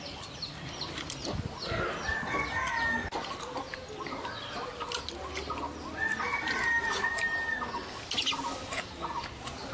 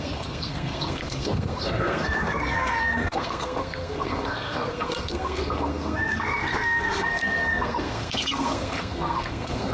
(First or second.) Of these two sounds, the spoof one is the second